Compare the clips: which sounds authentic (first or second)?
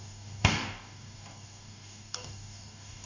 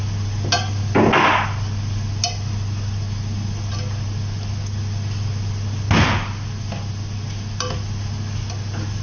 second